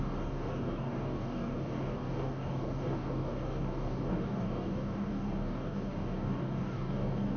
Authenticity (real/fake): fake